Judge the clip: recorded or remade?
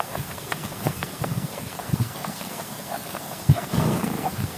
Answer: remade